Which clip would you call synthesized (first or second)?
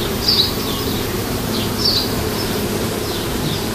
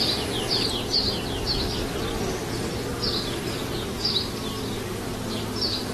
first